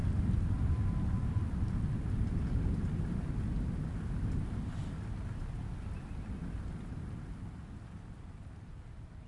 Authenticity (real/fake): real